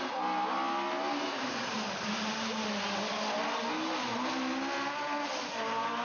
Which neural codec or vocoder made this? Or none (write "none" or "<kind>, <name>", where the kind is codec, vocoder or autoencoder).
none